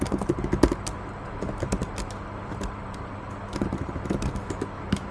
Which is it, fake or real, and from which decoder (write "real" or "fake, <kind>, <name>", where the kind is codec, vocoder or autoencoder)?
real